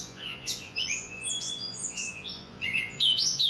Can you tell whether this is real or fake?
fake